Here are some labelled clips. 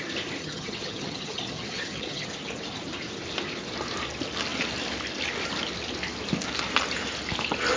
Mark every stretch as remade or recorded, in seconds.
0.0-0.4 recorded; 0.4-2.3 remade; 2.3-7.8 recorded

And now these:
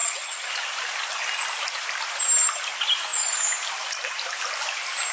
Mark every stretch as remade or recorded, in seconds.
0.0-0.5 remade; 0.5-5.1 recorded

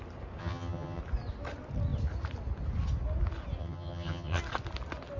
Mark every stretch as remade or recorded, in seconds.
0.0-0.4 recorded; 0.4-1.0 remade; 1.0-3.6 recorded; 3.6-4.4 remade; 4.4-5.2 recorded